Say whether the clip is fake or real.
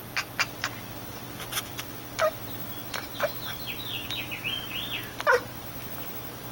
real